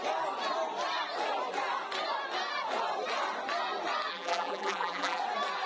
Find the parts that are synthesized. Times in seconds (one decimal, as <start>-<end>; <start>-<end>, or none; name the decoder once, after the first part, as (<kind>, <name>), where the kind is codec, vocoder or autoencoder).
4.1-5.2 (vocoder, BigVGAN v2)